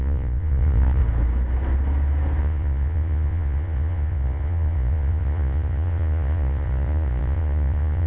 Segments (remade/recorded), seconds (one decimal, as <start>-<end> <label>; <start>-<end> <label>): 0.0-1.0 remade; 1.0-2.4 recorded; 2.4-8.1 remade